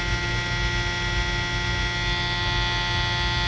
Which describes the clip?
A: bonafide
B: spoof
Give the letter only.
A